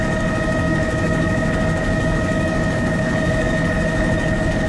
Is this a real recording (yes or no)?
no